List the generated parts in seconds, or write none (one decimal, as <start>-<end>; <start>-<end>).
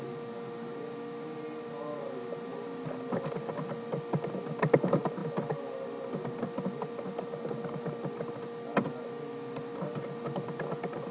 none